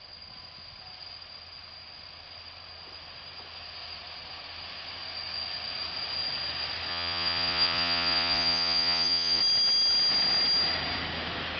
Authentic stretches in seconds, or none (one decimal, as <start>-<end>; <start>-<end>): 0.0-6.9; 9.4-11.6